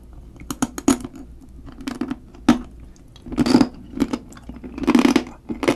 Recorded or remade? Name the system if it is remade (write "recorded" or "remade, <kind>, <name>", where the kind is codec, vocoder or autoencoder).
recorded